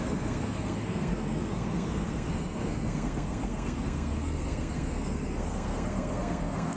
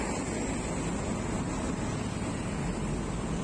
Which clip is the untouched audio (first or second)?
second